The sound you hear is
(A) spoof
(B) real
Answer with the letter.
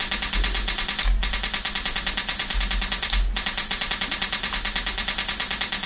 B